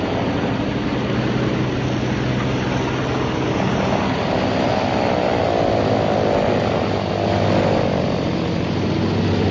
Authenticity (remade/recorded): recorded